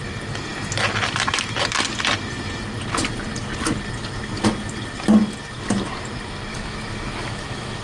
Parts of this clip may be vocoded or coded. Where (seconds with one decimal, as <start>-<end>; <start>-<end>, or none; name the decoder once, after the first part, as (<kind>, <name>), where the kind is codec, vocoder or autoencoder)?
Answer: 6.5-7.8 (autoencoder, DAC-VAE)